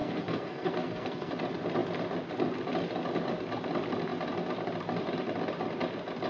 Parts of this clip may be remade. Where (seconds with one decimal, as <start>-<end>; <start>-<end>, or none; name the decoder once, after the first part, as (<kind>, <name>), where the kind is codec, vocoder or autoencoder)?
0.0-1.3 (codec, SNAC)